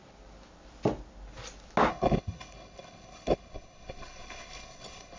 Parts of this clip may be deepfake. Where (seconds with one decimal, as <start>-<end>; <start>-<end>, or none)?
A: 1.9-5.2

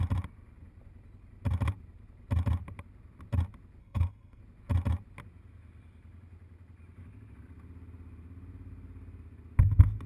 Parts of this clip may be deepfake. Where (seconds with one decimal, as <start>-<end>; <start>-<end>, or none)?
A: 3.8-4.4

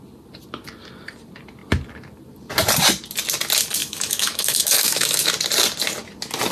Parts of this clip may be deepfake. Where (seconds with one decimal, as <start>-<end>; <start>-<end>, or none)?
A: 3.8-5.3

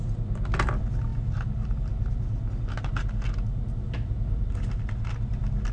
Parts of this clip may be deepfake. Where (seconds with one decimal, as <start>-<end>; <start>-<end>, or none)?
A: none